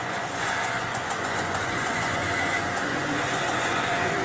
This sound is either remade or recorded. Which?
remade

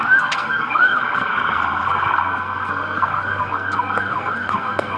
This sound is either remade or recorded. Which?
remade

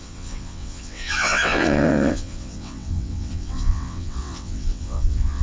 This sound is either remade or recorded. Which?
remade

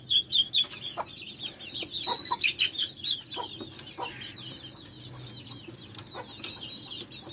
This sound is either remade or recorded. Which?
recorded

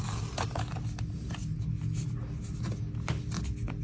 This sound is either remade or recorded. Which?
recorded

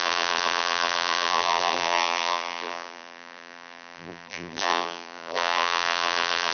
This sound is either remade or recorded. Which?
remade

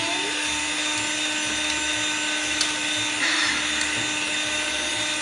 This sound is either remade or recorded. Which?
recorded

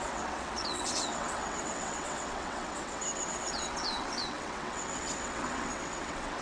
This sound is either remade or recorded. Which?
remade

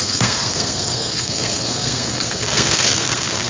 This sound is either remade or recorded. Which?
remade